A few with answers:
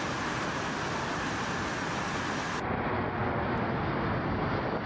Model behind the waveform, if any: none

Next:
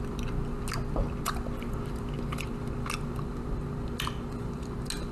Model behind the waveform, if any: none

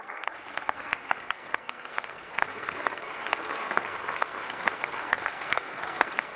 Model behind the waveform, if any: codec, SNAC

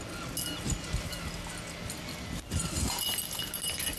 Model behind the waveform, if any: none